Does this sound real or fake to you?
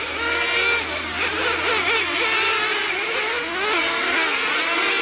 real